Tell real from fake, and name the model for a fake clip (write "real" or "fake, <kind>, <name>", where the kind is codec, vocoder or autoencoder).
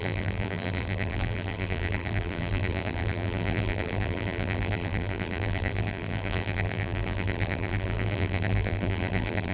fake, vocoder, BigVGAN v2